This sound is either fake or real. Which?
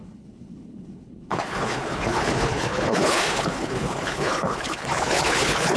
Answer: fake